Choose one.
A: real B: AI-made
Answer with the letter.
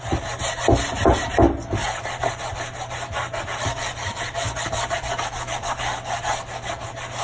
A